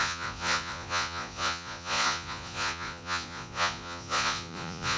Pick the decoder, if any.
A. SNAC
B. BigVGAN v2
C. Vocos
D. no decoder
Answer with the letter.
C